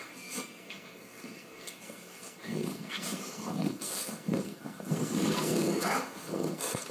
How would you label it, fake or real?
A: fake